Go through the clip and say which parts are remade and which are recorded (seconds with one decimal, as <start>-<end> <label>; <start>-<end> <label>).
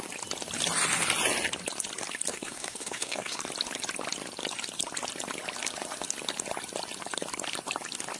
0.0-2.3 recorded; 2.3-3.4 remade; 3.4-8.2 recorded